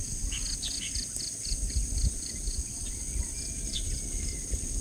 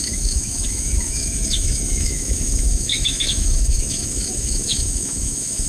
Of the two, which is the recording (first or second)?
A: first